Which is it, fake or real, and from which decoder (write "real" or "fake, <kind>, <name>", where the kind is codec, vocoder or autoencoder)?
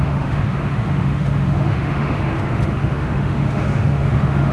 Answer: fake, autoencoder, DAC-VAE